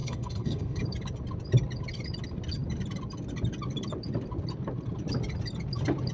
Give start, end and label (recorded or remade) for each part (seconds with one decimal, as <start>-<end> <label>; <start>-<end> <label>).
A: 0.0-0.8 remade; 0.8-6.1 recorded